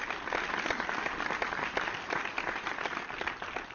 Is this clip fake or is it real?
real